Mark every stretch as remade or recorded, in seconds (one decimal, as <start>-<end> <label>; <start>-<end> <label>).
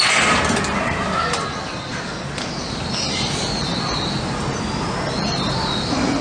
0.0-6.2 recorded